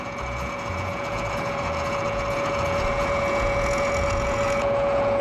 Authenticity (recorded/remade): remade